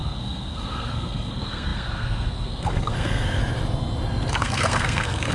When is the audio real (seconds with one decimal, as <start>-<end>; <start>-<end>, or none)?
3.4-4.3